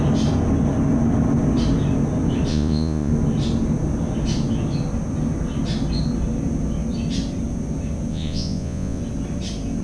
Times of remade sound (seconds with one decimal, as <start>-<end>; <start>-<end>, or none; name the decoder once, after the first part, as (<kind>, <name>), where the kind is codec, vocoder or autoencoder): 2.5-3.1 (vocoder, Vocos); 8.1-9.0